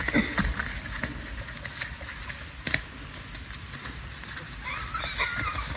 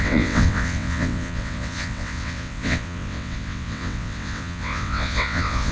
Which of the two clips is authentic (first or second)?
first